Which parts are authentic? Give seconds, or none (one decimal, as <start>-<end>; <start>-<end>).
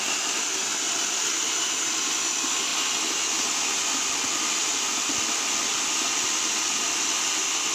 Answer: 0.0-7.7